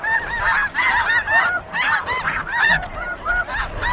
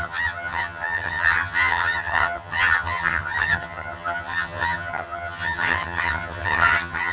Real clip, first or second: first